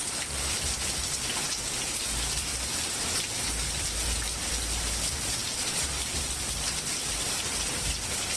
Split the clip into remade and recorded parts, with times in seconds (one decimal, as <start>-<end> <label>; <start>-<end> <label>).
0.0-8.4 recorded